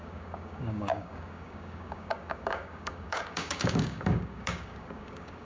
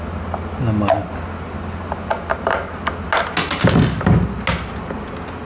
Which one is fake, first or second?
first